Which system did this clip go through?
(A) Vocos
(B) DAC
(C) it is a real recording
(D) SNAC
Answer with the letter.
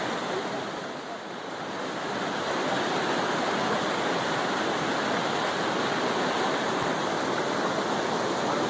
C